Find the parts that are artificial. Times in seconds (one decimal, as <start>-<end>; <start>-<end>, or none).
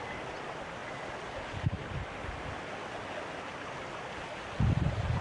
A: none